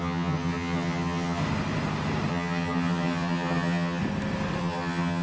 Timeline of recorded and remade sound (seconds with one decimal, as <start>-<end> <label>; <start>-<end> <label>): 0.0-1.4 remade; 1.4-2.3 recorded; 2.3-4.0 remade; 4.0-4.6 recorded; 4.6-5.2 remade